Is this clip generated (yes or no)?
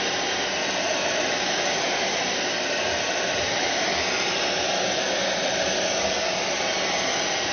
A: no